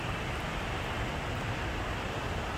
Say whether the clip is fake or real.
fake